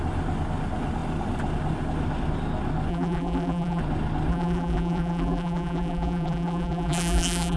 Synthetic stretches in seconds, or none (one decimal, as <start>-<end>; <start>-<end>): 2.9-3.8; 4.3-7.6